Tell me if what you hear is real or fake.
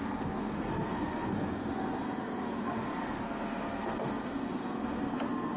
fake